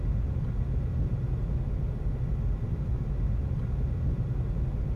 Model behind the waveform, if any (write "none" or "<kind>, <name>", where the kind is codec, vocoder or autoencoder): none